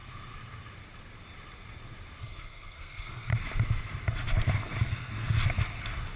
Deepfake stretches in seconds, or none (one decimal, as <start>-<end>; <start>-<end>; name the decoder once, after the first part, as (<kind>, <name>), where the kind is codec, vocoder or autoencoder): 2.2-3.3 (codec, SNAC)